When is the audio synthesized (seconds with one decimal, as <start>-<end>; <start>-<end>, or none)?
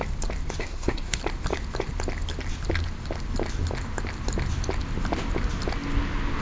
0.6-1.2